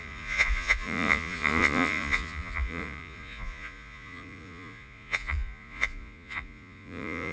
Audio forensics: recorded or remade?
remade